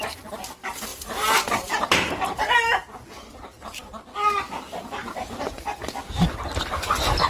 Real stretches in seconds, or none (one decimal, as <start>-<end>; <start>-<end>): 0.0-0.9; 2.7-7.3